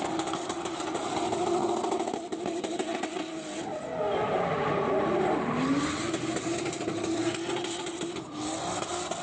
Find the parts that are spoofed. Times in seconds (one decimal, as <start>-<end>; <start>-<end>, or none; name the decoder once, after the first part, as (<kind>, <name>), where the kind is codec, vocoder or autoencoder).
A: none